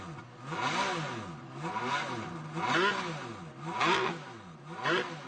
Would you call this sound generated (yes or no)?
no